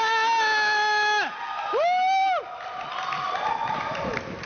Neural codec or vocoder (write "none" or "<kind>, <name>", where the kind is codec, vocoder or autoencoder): none